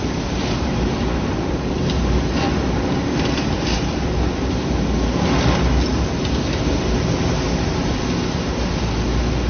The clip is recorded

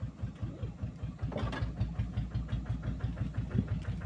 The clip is recorded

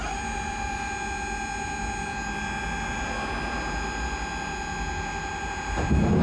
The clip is recorded